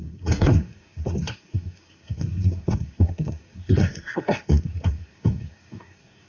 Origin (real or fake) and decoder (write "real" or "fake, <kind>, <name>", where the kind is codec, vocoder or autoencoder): fake, codec, SNAC